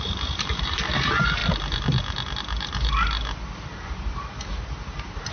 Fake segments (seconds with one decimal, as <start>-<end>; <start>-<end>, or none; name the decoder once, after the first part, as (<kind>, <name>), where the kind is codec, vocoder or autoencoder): 0.0-1.4 (vocoder, BigVGAN v2); 4.0-5.3